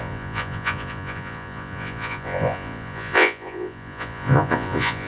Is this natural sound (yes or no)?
no